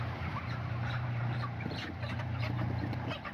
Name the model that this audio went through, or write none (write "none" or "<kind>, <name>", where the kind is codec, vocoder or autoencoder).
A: vocoder, BigVGAN v2